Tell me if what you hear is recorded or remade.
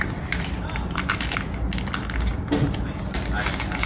recorded